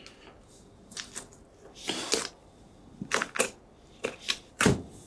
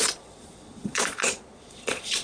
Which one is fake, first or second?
second